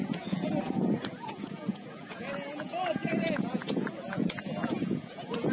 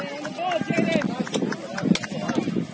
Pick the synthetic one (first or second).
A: first